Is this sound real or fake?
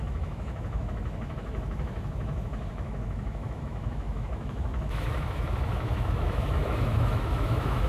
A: fake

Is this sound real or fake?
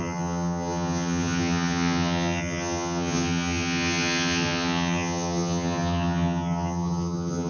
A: fake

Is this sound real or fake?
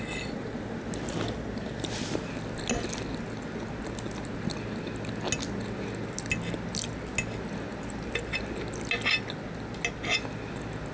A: real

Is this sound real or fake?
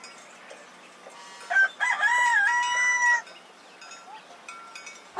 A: real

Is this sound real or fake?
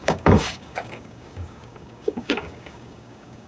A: fake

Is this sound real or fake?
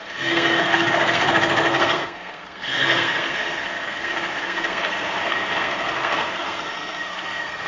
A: fake